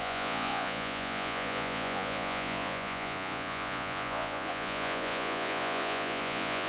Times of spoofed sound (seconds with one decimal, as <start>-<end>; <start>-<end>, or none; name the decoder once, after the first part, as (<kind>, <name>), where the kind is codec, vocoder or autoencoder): 0.0-6.7 (vocoder, Vocos)